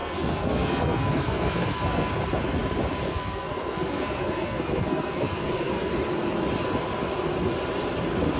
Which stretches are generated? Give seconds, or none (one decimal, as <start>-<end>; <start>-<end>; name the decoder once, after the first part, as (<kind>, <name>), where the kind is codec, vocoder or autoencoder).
0.0-2.1 (codec, SNAC); 3.1-5.9